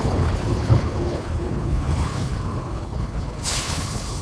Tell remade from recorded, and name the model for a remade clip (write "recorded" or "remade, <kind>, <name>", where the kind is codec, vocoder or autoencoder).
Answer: remade, codec, HILCodec